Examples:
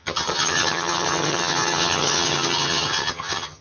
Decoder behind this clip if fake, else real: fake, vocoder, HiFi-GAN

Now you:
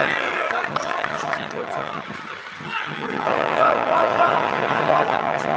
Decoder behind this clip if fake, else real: fake, vocoder, HiFi-GAN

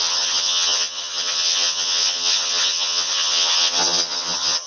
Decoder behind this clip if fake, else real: fake, vocoder, HiFi-GAN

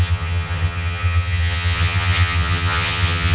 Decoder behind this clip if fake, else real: fake, vocoder, HiFi-GAN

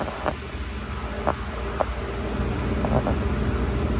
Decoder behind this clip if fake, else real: real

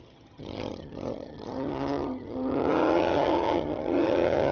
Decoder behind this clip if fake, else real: fake, vocoder, HiFi-GAN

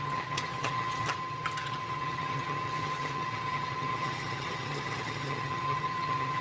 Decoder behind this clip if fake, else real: fake, vocoder, HiFi-GAN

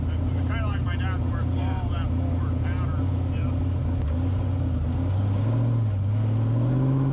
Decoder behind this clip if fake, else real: real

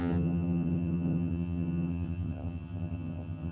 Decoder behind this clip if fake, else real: fake, vocoder, HiFi-GAN